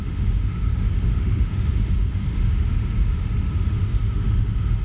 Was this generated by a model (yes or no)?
yes